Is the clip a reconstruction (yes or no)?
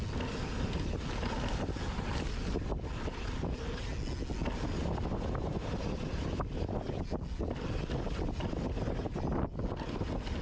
no